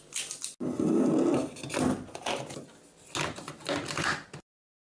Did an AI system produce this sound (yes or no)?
no